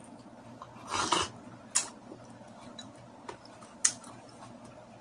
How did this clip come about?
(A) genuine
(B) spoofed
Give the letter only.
A